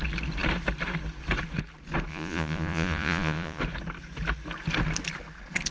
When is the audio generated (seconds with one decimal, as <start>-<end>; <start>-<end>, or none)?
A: 2.1-3.6